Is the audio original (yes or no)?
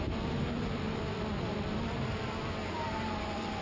no